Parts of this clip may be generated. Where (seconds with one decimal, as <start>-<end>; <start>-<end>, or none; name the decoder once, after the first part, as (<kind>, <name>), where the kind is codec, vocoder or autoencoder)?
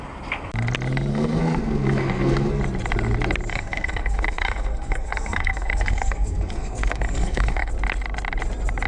1.1-2.6 (codec, SNAC); 3.5-7.7